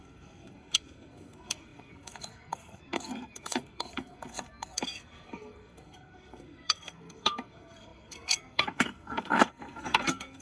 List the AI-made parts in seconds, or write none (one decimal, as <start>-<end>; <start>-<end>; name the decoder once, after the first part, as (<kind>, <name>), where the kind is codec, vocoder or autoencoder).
0.0-10.4 (codec, SNAC)

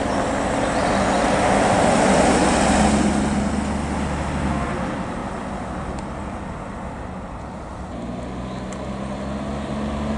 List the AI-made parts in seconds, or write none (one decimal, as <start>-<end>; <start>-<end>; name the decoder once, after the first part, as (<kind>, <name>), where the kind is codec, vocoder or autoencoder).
none

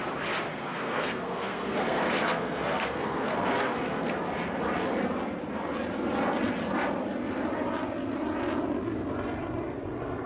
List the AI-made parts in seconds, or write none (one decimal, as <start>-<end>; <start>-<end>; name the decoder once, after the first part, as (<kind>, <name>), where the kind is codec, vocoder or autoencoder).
0.5-4.1 (codec, SNAC)

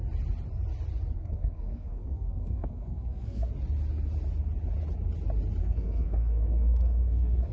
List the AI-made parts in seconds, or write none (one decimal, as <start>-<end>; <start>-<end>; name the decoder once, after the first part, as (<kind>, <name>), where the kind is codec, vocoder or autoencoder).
1.2-3.5 (codec, SNAC); 5.6-7.5

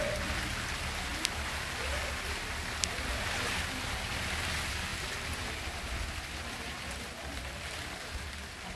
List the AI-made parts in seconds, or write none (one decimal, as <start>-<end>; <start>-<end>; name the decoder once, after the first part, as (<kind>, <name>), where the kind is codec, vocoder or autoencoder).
none

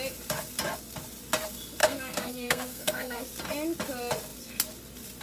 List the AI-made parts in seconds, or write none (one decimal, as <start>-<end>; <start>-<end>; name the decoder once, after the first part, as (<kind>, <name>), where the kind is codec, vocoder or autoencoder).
1.8-3.2 (codec, SNAC)